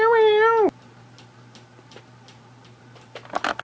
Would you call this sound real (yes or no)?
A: yes